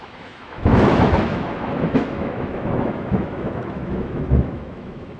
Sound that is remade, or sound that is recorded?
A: remade